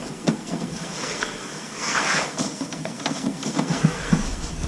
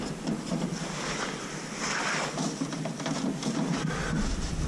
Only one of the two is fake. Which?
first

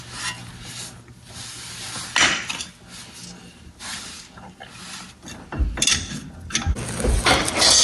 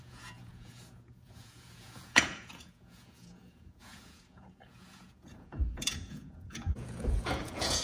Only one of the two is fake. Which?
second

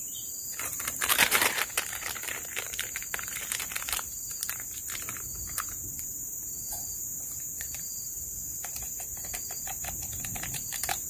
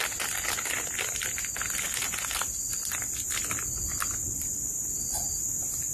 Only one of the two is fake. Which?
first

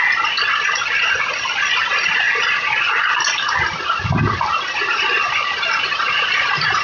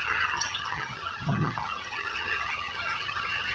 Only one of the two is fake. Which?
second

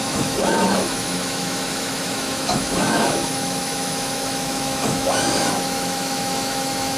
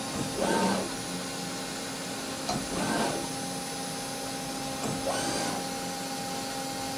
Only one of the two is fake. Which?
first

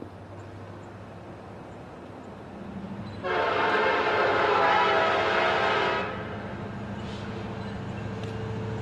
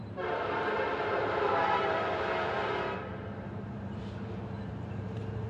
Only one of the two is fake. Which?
second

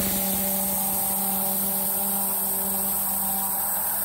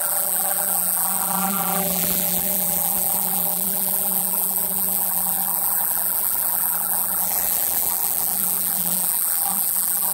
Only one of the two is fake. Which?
second